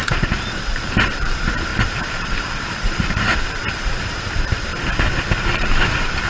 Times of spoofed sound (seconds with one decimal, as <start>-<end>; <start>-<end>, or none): 0.0-4.7; 5.6-6.3